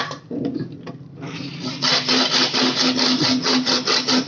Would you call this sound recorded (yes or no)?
yes